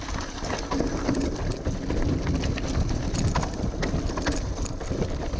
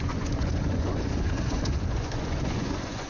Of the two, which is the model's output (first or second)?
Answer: second